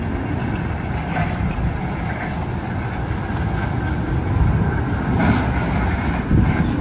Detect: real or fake real